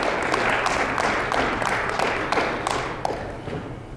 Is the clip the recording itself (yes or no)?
yes